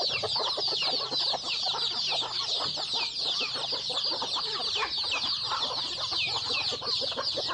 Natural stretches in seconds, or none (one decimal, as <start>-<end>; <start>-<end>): 0.0-7.5